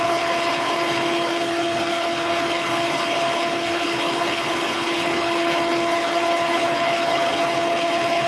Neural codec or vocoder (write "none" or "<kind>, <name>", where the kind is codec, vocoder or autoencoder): codec, HILCodec